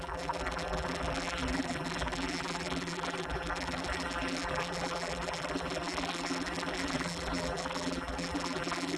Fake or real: fake